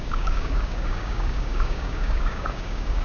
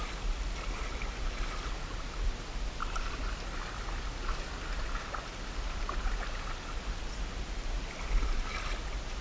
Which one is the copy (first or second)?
first